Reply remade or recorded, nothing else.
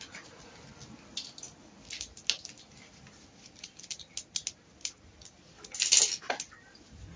recorded